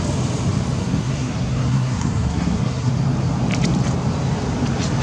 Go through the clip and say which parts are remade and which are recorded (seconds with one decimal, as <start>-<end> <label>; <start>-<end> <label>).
0.0-0.8 recorded; 0.8-2.9 remade; 2.9-5.0 recorded